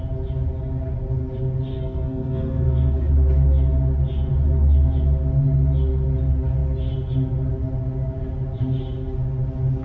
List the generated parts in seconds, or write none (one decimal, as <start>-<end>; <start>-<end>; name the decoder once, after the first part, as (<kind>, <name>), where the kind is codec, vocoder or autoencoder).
1.7-3.1 (codec, SNAC)